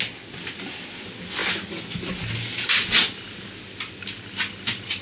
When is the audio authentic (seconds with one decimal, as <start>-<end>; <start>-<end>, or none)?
0.0-5.0